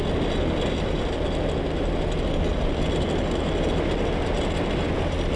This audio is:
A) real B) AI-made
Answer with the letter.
A